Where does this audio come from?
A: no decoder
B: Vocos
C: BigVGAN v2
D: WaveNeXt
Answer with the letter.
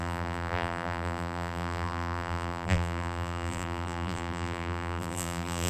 C